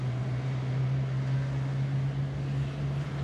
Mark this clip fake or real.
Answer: real